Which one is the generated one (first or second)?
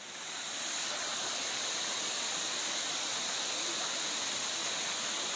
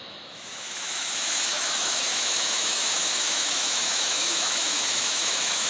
second